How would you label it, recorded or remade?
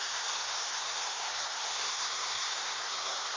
remade